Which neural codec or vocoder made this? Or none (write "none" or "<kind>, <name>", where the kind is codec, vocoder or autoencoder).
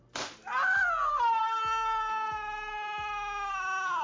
none